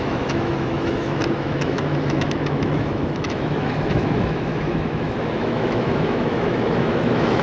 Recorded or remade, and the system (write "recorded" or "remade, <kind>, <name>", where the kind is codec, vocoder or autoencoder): remade, autoencoder, DAC-VAE